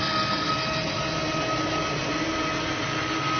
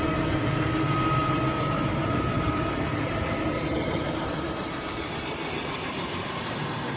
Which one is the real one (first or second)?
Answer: first